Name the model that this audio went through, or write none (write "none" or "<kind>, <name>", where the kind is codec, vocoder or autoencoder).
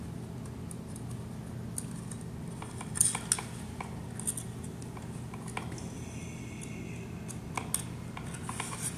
none